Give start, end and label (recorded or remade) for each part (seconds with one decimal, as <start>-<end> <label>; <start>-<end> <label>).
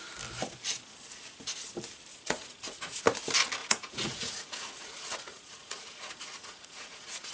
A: 0.0-2.1 recorded; 2.1-3.0 remade; 3.0-3.6 recorded; 3.6-7.3 remade